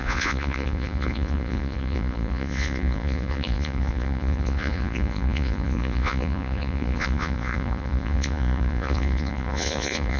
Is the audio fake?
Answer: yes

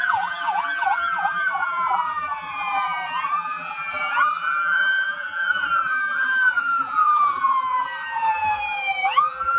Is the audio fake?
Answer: yes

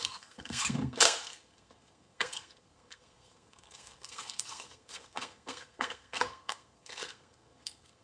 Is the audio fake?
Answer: yes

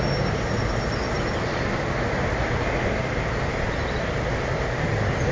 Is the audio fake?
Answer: no